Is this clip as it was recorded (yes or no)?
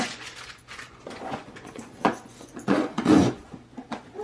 no